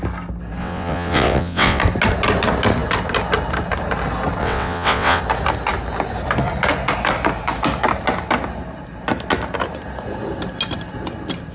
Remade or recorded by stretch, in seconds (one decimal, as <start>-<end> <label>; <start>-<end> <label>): 0.0-0.6 recorded; 0.6-1.8 remade; 1.8-4.4 recorded; 4.4-5.2 remade; 5.2-11.5 recorded